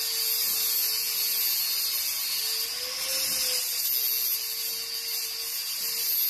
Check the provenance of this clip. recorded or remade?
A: recorded